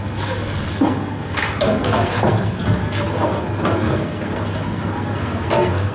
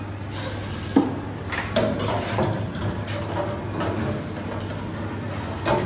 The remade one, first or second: first